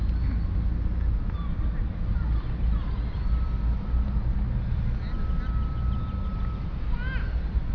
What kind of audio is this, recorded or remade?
recorded